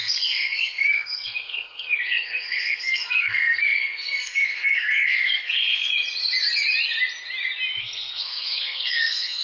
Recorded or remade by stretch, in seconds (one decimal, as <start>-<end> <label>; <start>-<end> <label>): 0.0-5.9 remade; 5.9-7.8 recorded; 7.8-9.4 remade